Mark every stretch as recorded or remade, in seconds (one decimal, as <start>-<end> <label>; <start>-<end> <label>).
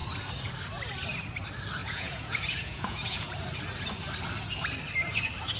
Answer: 0.0-1.8 recorded; 1.8-3.3 remade; 3.3-5.6 recorded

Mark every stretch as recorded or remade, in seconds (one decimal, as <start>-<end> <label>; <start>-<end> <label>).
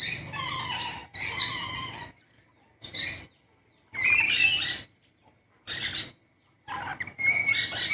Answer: 0.0-7.9 recorded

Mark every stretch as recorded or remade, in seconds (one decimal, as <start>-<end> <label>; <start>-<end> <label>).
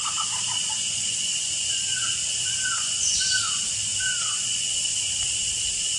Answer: 0.0-0.6 recorded; 0.6-3.2 remade; 3.2-3.9 recorded; 3.9-5.1 remade; 5.1-6.0 recorded